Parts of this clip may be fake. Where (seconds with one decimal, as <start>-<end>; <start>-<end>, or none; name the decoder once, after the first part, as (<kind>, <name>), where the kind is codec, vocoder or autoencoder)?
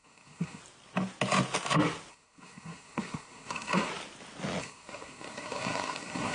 0.0-0.6 (codec, SNAC); 2.1-3.9; 4.6-6.3